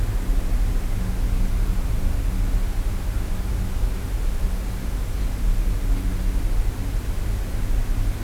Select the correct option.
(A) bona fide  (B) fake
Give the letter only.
A